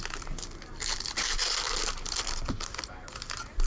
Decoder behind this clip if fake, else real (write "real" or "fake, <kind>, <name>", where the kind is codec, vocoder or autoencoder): real